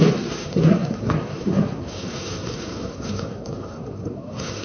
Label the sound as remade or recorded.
remade